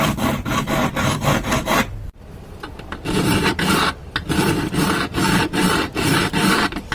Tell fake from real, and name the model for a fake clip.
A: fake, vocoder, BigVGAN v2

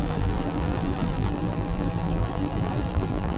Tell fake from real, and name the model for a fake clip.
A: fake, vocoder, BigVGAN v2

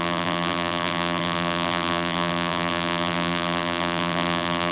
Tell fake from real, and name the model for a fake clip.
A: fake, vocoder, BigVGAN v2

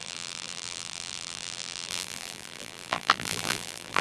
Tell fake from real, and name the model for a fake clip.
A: fake, vocoder, BigVGAN v2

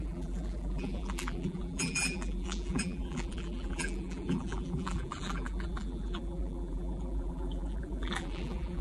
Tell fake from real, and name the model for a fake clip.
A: fake, vocoder, BigVGAN v2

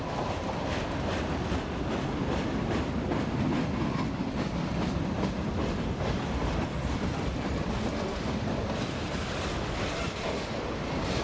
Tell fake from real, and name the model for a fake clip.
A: fake, vocoder, BigVGAN v2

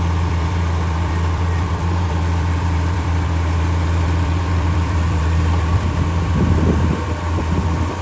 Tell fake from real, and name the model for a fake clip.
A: fake, vocoder, BigVGAN v2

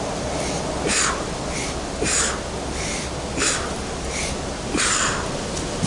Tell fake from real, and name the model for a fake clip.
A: real